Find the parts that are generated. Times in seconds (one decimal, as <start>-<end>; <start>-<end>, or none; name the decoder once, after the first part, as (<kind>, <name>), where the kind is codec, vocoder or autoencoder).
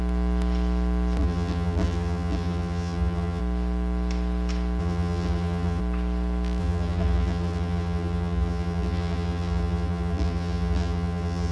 1.2-3.4 (vocoder, BigVGAN v2); 4.8-5.8; 6.6-11.5